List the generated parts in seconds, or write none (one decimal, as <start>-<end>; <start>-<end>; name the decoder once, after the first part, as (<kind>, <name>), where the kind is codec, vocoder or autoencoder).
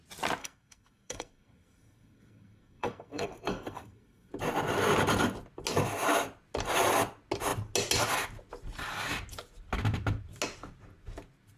0.4-4.3 (codec, SNAC)